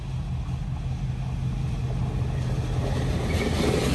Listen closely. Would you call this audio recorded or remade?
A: recorded